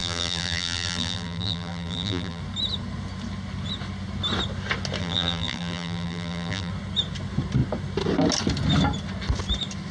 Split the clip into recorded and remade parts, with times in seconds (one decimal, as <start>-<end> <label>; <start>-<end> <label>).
0.0-2.4 remade; 2.4-5.0 recorded; 5.0-6.7 remade; 6.7-9.9 recorded